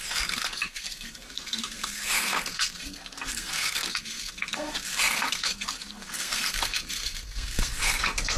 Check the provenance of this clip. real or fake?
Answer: fake